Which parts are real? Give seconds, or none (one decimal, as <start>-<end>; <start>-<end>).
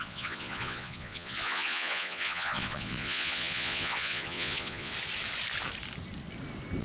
4.9-6.8